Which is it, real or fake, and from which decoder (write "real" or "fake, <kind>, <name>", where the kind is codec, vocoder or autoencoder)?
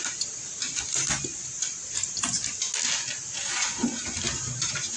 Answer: real